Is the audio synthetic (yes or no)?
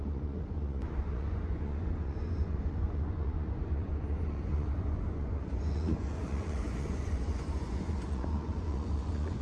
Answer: yes